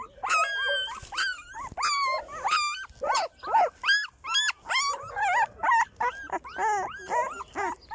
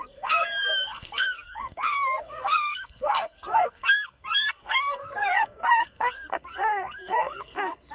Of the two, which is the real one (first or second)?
first